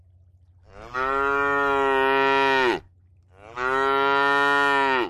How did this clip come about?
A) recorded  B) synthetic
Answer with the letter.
A